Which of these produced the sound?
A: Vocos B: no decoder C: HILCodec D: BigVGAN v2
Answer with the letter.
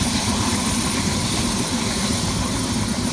D